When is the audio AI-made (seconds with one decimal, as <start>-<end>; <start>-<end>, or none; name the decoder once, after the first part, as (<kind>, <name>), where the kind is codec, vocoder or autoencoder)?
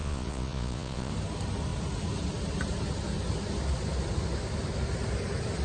0.0-1.1 (vocoder, Vocos)